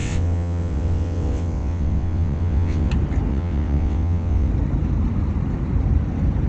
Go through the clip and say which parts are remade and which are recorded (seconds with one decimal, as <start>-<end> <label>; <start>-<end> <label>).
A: 0.0-2.9 remade; 2.9-3.3 recorded; 3.3-4.5 remade; 4.5-6.5 recorded